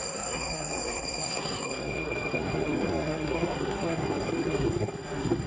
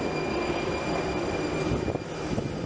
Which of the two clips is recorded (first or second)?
second